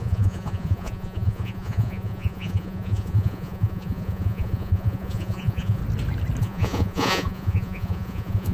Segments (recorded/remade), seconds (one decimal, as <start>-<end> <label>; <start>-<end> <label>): 0.0-5.8 remade; 5.8-6.4 recorded; 6.4-8.5 remade